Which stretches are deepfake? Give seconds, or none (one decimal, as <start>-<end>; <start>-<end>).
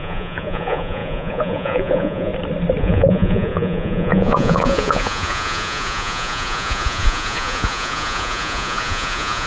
0.0-2.3; 2.8-9.5